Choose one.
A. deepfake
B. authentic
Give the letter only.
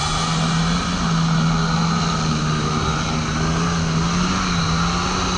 B